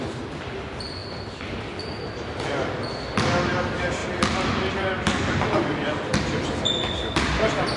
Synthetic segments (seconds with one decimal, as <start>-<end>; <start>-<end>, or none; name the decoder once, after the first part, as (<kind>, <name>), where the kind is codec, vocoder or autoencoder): 0.0-6.1 (vocoder, BigVGAN v2); 7.2-7.8